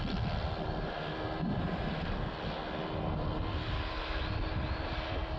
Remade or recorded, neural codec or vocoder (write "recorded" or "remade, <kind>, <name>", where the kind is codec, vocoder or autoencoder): recorded